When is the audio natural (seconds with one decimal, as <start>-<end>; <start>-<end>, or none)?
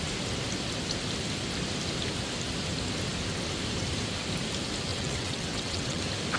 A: 0.0-4.9; 6.0-6.4